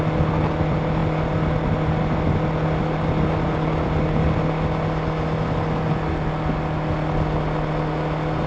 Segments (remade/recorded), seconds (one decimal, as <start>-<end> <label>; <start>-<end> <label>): 0.0-8.5 recorded